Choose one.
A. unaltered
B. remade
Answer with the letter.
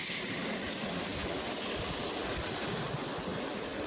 A